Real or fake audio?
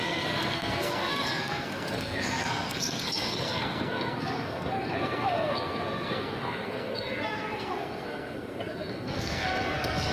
fake